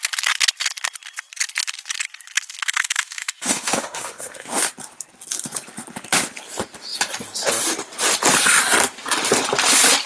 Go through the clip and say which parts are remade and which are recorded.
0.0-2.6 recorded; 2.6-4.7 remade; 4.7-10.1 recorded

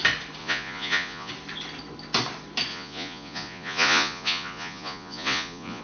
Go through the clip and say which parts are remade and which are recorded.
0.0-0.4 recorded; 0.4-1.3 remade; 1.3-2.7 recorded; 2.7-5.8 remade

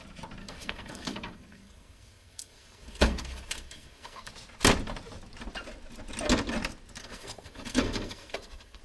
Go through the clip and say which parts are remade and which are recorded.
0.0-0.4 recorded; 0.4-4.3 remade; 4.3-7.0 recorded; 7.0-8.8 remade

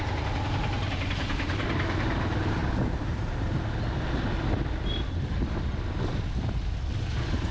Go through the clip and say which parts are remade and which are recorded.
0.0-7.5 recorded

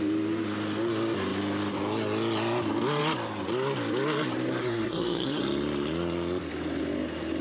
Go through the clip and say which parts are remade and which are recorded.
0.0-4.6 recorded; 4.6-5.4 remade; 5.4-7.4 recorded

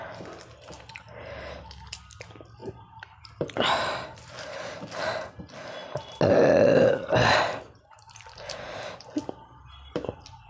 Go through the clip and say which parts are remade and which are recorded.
0.0-2.6 recorded; 2.6-4.8 remade; 4.8-10.5 recorded